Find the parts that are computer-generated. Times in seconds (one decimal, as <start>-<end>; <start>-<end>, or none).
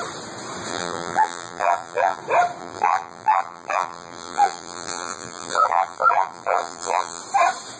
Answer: 0.7-2.2; 2.6-7.2